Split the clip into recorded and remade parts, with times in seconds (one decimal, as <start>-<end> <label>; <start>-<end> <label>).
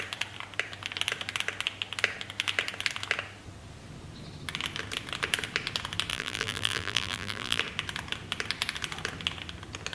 0.0-6.1 recorded; 6.1-7.6 remade; 7.6-9.9 recorded